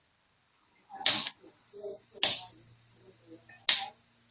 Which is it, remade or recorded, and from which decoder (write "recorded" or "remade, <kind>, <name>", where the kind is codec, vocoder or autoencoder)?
recorded